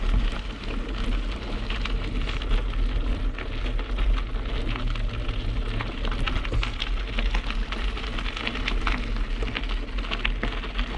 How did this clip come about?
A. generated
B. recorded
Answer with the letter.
B